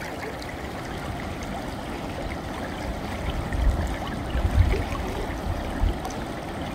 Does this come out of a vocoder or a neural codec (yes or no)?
no